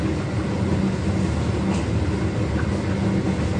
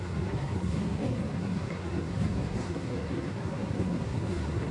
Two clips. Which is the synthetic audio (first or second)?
second